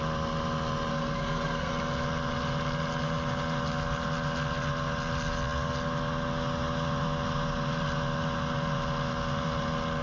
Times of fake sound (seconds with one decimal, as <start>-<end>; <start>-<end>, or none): 0.9-1.7